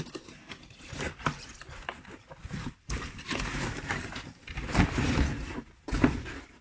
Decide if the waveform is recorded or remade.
remade